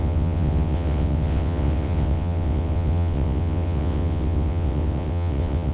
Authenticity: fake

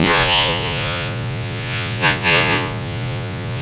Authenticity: fake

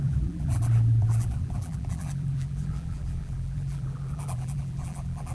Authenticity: fake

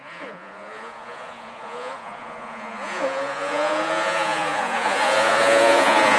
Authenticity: fake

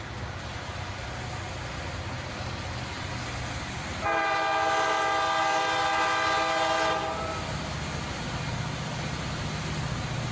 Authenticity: real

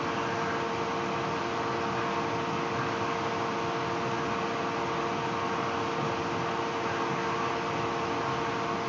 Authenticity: real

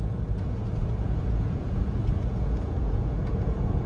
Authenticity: fake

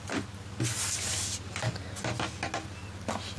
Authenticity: real